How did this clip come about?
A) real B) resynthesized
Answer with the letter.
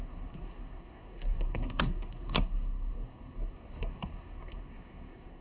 B